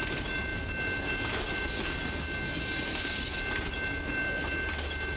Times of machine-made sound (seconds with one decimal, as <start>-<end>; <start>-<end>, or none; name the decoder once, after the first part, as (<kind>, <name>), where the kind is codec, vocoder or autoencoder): none